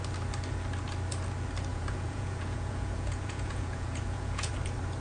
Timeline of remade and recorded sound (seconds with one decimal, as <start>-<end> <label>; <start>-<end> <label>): 0.0-1.7 recorded; 1.7-4.5 remade; 4.5-5.0 recorded